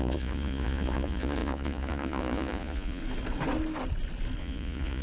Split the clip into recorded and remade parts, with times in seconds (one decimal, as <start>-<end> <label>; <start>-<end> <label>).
0.0-3.0 remade; 3.0-4.4 recorded; 4.4-5.0 remade